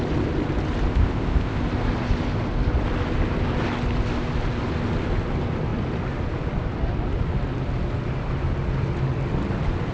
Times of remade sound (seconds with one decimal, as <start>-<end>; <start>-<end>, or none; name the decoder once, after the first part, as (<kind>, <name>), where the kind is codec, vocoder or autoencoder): 0.9-1.6 (codec, ZipCodec)